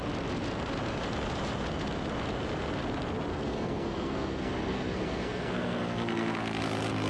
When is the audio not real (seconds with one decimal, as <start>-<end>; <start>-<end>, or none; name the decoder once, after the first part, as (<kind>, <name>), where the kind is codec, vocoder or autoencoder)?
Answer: 3.3-7.1 (codec, SNAC)